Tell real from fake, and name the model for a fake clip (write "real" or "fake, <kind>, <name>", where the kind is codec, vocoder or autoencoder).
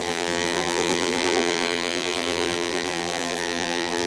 fake, vocoder, BigVGAN v2